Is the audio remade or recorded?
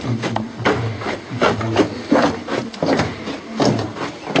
recorded